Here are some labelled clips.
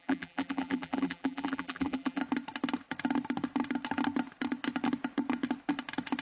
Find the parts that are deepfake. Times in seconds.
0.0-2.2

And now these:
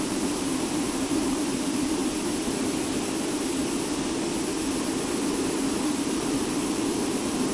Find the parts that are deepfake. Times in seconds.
0.0-2.0; 5.3-7.5

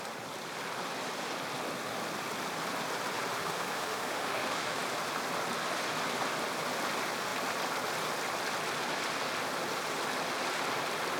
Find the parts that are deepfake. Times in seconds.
3.4-4.8

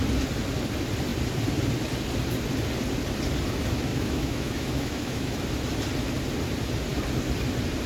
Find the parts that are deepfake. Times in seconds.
3.9-5.4

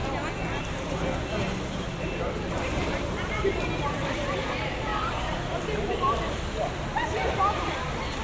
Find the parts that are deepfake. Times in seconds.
1.4-8.2

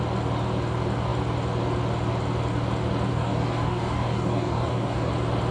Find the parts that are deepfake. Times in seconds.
3.1-5.1